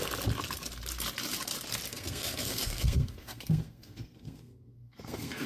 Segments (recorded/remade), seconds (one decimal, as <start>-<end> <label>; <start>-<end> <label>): 0.0-1.9 recorded; 1.9-5.5 remade